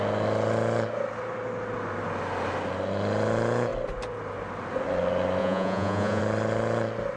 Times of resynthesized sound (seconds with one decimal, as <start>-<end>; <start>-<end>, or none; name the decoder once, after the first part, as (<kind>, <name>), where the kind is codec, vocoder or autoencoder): 5.4-6.2 (vocoder, Vocos)